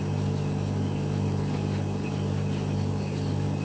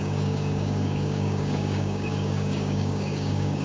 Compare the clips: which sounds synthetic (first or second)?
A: second